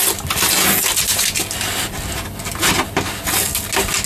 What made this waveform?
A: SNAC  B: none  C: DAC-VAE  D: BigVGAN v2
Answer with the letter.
B